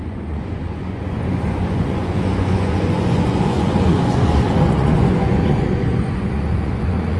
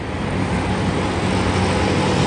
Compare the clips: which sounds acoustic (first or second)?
second